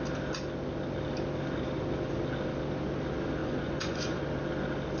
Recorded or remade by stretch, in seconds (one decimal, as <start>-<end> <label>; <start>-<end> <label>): 0.0-3.4 recorded; 3.4-4.2 remade; 4.2-5.0 recorded